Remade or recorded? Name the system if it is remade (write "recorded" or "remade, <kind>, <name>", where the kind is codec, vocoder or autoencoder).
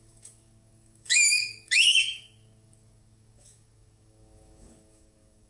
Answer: remade, codec, DAC